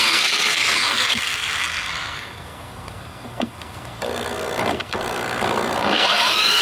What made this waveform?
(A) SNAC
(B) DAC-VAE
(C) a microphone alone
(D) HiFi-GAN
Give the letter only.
A